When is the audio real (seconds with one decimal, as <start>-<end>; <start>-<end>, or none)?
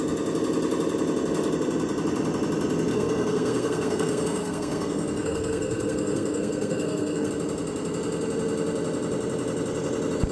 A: 0.0-2.9; 7.3-10.3